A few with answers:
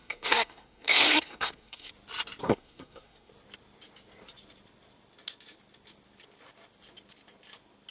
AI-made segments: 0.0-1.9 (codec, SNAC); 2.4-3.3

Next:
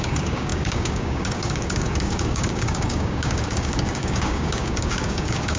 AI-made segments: 0.0-5.6 (codec, DAC)

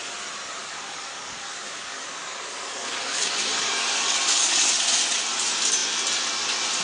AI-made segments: 0.6-4.7 (codec, DAC)

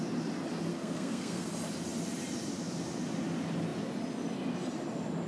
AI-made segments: 0.7-1.5 (codec, SNAC)